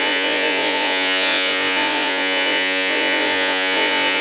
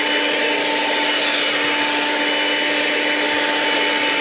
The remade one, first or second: first